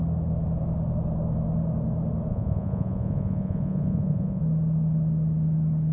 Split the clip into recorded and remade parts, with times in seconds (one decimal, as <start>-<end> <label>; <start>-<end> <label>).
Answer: 0.0-2.3 recorded; 2.3-4.4 remade; 4.4-5.9 recorded